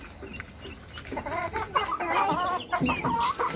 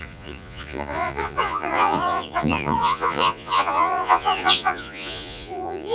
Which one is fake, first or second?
second